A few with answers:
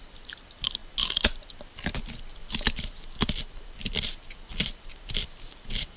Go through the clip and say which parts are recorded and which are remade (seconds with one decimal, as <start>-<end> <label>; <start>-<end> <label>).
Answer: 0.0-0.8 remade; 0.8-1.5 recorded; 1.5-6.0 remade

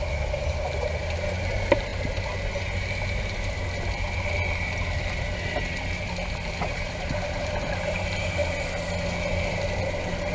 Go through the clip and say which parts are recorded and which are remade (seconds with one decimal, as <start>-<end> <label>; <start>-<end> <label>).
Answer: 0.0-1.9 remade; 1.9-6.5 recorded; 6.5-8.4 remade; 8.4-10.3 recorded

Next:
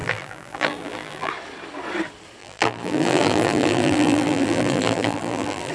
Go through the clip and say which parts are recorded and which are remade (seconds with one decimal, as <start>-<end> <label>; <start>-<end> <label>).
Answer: 0.0-1.3 remade; 1.3-2.4 recorded; 2.4-5.7 remade

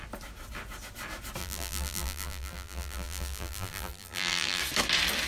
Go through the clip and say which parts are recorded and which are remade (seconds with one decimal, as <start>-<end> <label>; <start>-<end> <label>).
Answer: 0.0-1.4 recorded; 1.4-4.6 remade; 4.6-5.3 recorded

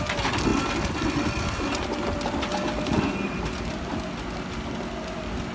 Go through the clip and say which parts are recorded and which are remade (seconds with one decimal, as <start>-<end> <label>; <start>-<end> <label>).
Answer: 0.0-0.5 recorded; 0.5-3.8 remade; 3.8-5.5 recorded

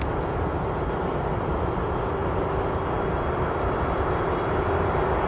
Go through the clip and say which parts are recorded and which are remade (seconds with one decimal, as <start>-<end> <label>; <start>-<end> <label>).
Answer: 0.0-5.3 remade

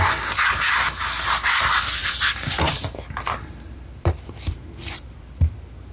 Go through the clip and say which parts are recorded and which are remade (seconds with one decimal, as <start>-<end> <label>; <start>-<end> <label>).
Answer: 0.0-2.0 recorded; 2.0-5.5 remade; 5.5-5.9 recorded